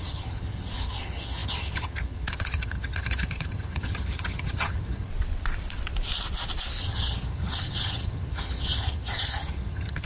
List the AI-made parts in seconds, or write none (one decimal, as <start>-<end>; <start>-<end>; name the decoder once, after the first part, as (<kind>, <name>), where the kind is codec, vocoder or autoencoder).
0.0-5.1 (vocoder, HiFi-GAN); 6.8-10.1